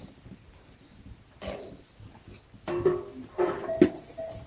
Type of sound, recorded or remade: recorded